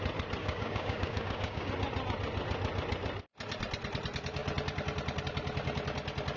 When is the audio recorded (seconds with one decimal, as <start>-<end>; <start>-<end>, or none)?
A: 0.0-0.4; 1.7-6.4